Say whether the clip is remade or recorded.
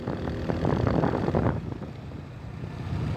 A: recorded